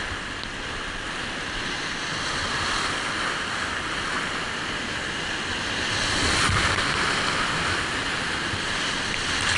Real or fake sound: real